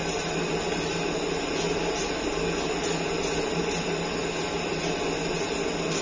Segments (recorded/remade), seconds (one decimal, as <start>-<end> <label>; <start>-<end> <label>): 0.0-6.0 recorded

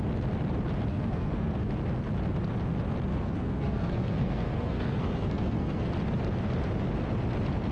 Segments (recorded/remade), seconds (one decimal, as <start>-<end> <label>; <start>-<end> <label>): 0.0-0.9 recorded; 0.9-1.7 remade; 1.7-3.1 recorded; 3.1-5.9 remade; 5.9-7.7 recorded

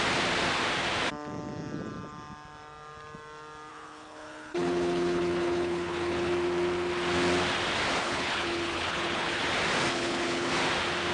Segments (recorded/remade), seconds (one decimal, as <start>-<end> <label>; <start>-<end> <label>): 0.0-3.7 recorded; 3.7-6.3 remade; 6.3-8.0 recorded; 8.0-9.4 remade; 9.4-9.9 recorded; 9.9-10.5 remade; 10.5-11.1 recorded

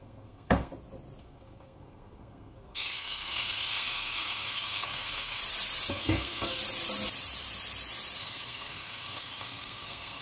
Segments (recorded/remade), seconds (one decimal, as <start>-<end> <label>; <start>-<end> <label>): 0.0-0.7 remade; 0.7-1.2 recorded; 1.2-5.4 remade; 5.4-5.9 recorded; 5.9-6.6 remade; 6.6-8.2 recorded; 8.2-10.2 remade